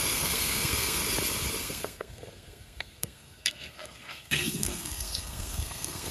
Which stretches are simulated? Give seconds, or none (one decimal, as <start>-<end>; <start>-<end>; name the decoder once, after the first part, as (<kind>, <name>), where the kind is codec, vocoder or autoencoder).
0.0-1.0 (codec, SNAC); 1.6-6.1